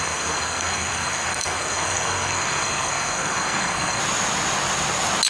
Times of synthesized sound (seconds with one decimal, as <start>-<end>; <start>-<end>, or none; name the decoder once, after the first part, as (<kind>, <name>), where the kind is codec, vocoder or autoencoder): 0.0-4.0 (codec, SNAC)